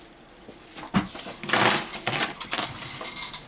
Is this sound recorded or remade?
recorded